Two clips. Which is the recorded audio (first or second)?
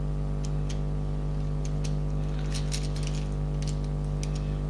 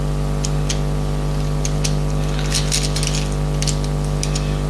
first